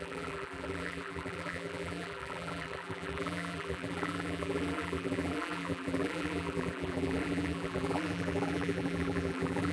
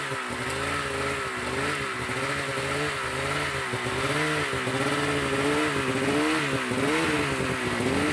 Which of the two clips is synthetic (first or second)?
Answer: first